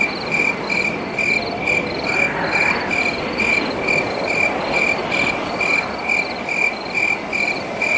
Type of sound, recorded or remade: recorded